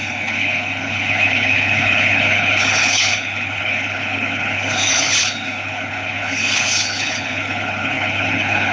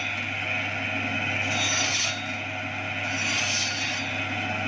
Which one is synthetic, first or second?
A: first